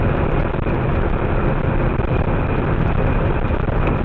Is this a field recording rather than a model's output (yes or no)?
yes